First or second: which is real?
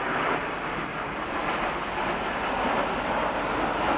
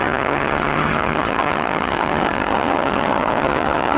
first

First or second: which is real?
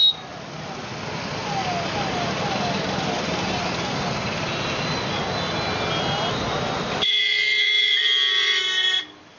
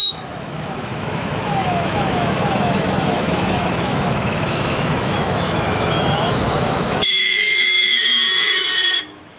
first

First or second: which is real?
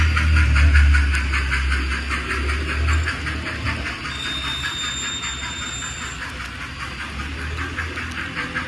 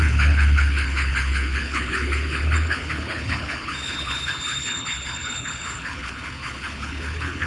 first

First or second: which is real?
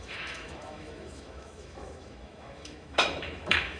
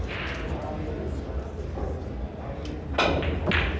second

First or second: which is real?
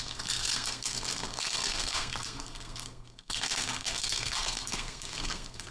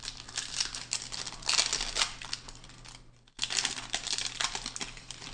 second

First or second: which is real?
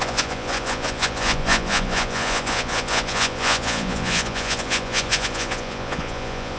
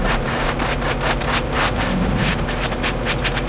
second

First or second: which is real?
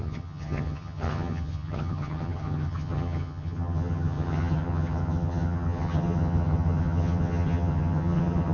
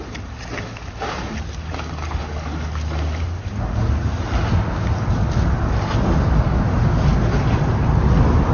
second